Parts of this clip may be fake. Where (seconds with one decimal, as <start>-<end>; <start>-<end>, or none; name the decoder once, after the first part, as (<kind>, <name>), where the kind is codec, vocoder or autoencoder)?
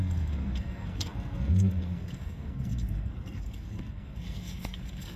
0.0-5.2 (codec, SNAC)